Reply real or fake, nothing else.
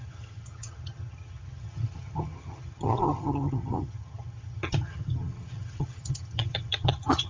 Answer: fake